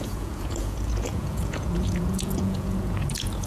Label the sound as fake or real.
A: fake